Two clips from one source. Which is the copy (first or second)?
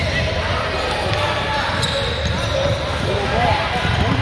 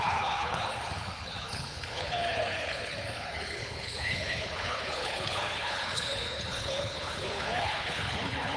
second